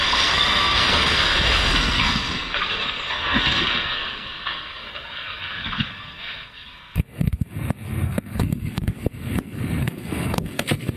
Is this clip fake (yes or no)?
yes